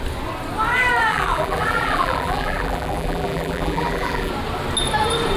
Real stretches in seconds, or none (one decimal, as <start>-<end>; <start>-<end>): 0.0-1.1; 4.3-5.4